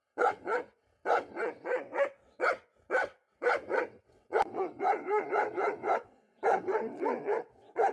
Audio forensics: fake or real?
fake